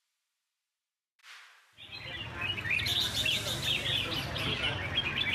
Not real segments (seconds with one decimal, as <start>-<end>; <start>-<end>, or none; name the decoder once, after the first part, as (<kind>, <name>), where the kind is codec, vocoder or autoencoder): none